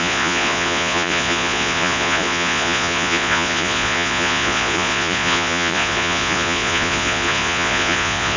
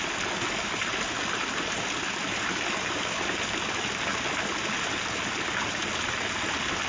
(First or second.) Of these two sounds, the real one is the second